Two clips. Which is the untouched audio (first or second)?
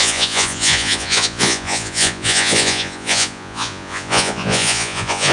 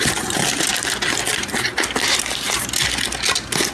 second